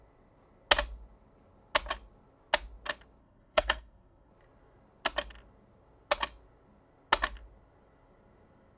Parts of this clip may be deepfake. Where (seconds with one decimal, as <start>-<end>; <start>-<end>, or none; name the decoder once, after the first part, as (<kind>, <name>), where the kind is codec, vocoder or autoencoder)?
3.2-4.3 (codec, SNAC)